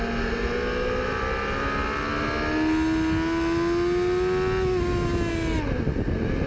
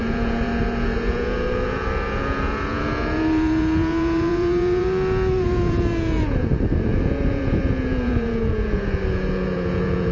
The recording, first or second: first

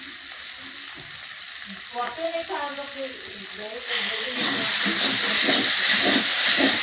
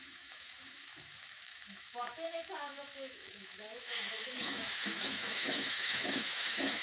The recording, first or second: first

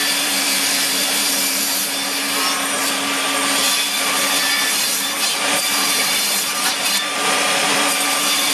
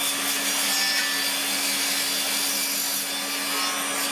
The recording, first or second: second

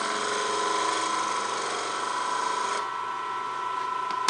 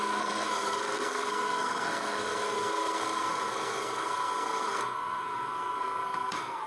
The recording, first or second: first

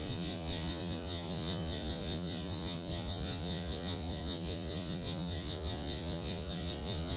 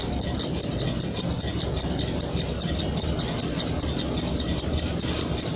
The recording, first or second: second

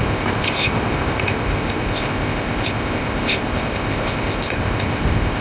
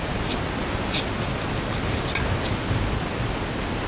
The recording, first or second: second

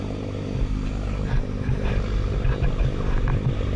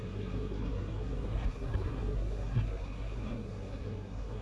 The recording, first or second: first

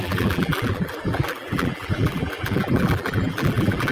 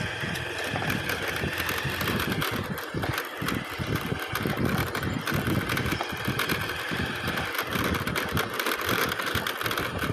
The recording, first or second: second